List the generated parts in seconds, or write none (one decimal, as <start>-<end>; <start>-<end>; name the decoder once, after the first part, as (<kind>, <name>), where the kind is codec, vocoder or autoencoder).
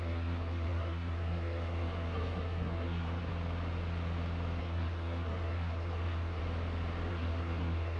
0.0-3.3 (codec, SNAC); 4.6-6.4; 7.1-8.0